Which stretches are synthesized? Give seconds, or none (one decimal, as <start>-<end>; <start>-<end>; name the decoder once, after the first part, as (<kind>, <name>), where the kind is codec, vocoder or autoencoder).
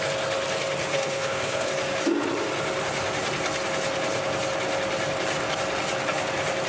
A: 0.9-1.7 (codec, SNAC)